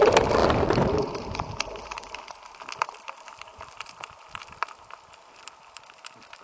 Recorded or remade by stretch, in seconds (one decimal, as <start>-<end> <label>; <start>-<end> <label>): 0.0-0.4 recorded; 0.4-2.2 remade; 2.2-6.4 recorded